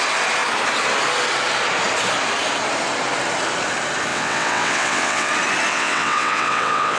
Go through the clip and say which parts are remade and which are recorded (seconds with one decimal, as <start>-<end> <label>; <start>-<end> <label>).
0.0-4.1 recorded; 4.1-5.3 remade; 5.3-5.7 recorded; 5.7-7.0 remade